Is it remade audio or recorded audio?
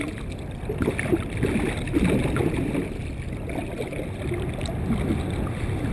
recorded